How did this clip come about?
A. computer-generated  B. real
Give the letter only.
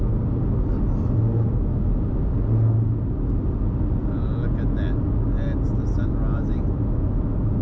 B